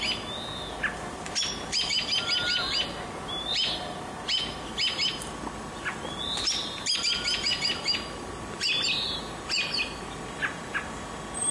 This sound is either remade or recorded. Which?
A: recorded